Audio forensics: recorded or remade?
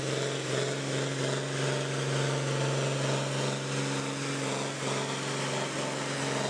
recorded